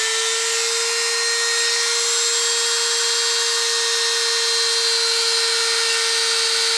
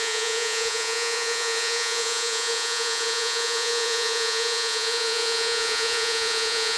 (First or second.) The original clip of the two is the first